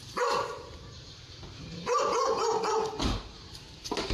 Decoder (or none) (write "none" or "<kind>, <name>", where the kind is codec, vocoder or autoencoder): vocoder, BigVGAN v2